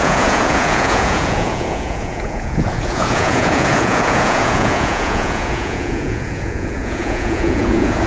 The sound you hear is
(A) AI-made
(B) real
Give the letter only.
A